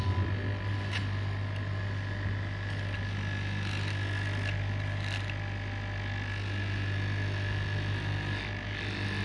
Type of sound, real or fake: real